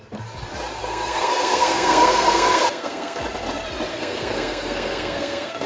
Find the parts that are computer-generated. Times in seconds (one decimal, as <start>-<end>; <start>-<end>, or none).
0.8-3.2; 3.9-5.7